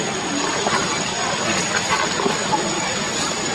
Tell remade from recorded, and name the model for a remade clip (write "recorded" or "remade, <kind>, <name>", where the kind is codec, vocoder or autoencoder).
recorded